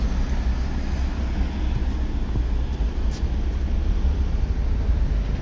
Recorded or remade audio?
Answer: recorded